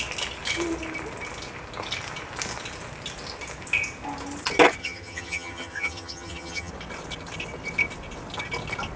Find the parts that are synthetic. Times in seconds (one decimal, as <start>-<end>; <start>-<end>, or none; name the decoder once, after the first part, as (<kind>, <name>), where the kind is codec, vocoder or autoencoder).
4.8-6.7 (vocoder, HiFi-GAN)